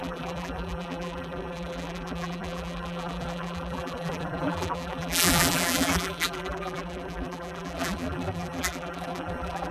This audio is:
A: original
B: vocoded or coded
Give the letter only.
B